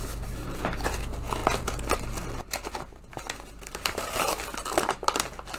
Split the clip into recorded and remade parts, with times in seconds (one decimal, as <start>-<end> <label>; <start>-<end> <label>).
0.0-5.6 recorded